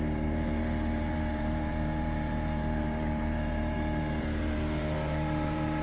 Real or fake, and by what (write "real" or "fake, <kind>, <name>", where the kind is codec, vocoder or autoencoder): fake, vocoder, BigVGAN v2